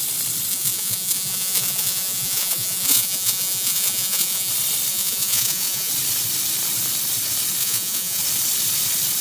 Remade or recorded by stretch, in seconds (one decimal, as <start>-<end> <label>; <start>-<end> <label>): 0.0-0.5 recorded; 0.5-4.5 remade; 4.5-4.9 recorded; 4.9-5.9 remade; 5.9-7.6 recorded; 7.6-8.2 remade; 8.2-9.2 recorded